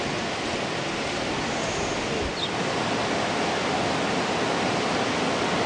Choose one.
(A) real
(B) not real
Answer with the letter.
A